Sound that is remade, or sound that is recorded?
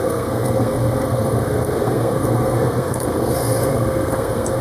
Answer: remade